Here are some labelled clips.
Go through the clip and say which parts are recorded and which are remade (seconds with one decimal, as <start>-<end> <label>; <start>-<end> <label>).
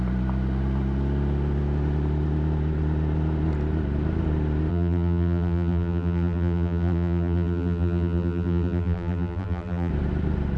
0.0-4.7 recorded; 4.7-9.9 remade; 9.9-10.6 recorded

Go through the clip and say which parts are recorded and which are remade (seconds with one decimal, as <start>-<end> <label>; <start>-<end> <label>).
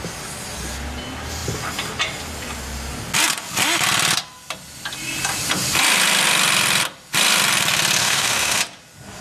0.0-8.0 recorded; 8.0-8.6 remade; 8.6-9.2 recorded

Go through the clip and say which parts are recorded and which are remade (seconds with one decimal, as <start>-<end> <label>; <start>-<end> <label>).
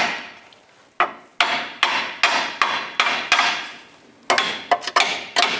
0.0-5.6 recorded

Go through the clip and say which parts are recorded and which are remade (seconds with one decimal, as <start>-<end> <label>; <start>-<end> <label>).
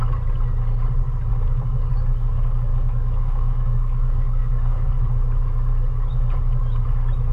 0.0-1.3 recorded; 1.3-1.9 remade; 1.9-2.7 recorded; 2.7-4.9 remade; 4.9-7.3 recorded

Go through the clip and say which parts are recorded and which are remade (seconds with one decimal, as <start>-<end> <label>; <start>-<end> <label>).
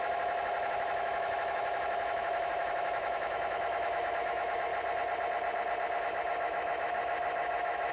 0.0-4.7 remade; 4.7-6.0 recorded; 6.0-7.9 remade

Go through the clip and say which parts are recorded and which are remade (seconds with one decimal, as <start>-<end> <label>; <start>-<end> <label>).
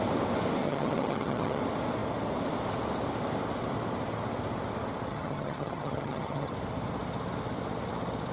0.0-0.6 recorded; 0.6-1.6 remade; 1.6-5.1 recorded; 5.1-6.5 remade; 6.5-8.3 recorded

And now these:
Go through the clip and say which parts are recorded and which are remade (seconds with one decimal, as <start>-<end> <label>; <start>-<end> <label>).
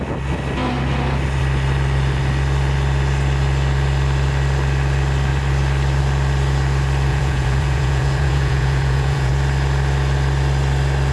0.0-7.1 recorded; 7.1-9.3 remade; 9.3-11.1 recorded